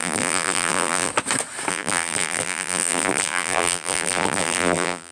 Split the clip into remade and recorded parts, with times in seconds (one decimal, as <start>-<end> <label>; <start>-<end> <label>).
0.0-1.1 remade; 1.1-1.7 recorded; 1.7-5.1 remade